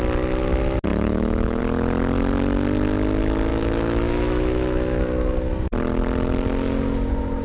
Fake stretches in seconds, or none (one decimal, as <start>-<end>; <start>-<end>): 0.9-1.6; 3.5-5.0